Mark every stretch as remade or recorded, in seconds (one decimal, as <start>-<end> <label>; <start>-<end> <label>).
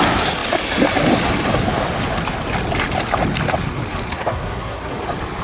0.0-4.1 recorded; 4.1-4.9 remade; 4.9-5.4 recorded